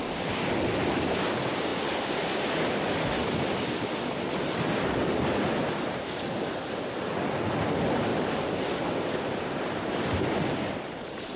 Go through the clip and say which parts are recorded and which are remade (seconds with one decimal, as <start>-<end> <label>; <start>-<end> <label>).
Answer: 0.0-11.4 recorded